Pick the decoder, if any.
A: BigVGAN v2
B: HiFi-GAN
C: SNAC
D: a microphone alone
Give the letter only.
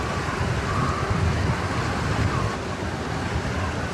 D